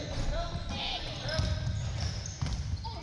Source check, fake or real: real